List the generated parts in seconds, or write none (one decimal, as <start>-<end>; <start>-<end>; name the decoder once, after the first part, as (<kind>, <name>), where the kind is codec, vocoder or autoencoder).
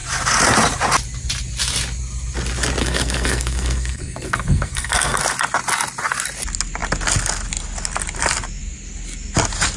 2.8-5.2 (codec, SNAC)